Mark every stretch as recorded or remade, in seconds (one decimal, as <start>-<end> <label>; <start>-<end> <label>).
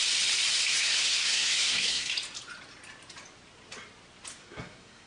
0.0-0.7 recorded; 0.7-2.1 remade; 2.1-4.3 recorded; 4.3-5.1 remade